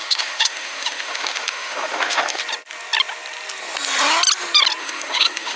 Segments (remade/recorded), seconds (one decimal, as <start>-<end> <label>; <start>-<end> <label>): 0.0-2.4 remade; 2.4-4.8 recorded; 4.8-5.6 remade

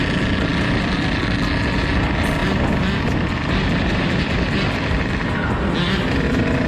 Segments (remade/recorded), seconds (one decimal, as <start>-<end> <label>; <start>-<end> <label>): 0.0-0.5 recorded; 0.5-1.2 remade; 1.2-6.7 recorded

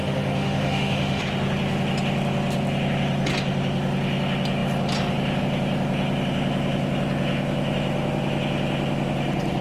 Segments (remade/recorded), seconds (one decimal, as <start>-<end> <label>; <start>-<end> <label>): 0.0-1.2 remade; 1.2-9.6 recorded

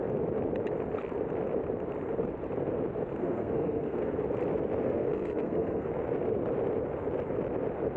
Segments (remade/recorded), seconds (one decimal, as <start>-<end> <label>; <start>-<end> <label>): 0.0-3.2 recorded; 3.2-4.2 remade; 4.2-4.8 recorded; 4.8-5.9 remade; 5.9-8.0 recorded

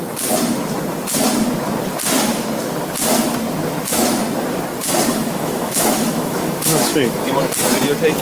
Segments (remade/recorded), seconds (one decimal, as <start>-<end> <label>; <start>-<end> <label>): 0.0-5.1 recorded; 5.1-7.3 remade; 7.3-8.2 recorded